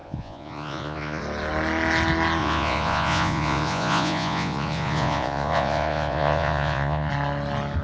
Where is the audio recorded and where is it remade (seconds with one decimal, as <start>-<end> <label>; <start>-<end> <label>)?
0.0-1.2 remade; 1.2-2.4 recorded; 2.4-7.1 remade; 7.1-7.8 recorded